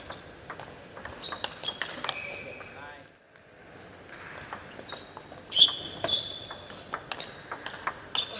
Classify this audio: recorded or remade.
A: recorded